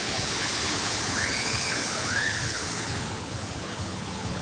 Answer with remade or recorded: remade